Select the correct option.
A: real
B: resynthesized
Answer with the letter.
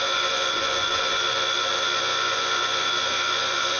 B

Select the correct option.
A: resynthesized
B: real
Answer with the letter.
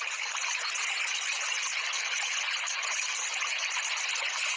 B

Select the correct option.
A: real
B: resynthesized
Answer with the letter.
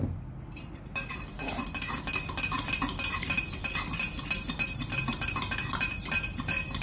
A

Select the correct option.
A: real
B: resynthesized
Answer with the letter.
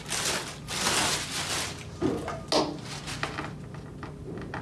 A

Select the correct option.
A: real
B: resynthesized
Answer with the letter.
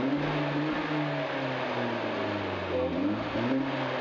A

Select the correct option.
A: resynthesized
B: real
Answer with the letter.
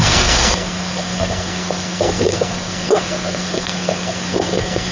A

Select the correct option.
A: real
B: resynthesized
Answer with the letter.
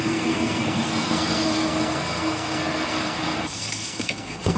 B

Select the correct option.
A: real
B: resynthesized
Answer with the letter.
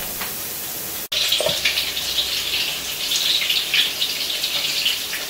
A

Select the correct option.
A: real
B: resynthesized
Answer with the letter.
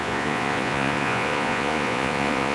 B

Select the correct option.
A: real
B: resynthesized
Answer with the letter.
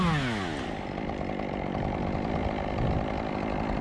A